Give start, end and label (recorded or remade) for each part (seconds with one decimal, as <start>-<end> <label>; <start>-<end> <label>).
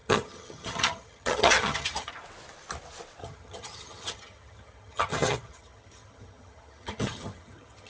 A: 0.0-2.1 remade; 2.1-3.2 recorded; 3.2-7.9 remade